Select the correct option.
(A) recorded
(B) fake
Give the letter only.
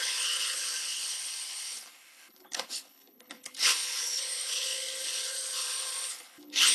B